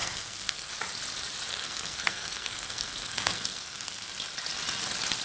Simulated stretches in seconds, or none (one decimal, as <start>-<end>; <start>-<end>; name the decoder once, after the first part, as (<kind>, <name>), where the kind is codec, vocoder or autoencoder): 0.0-0.7 (codec, SNAC); 1.5-4.1